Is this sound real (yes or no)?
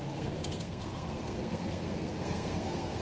no